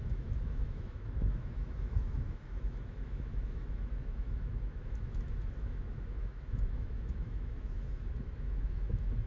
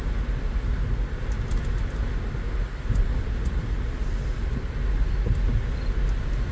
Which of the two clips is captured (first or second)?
second